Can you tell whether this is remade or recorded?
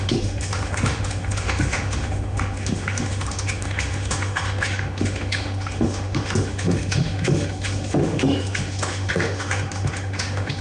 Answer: remade